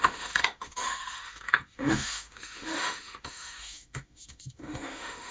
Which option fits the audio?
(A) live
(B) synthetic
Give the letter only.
B